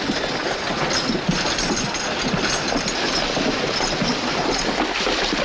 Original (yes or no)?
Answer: yes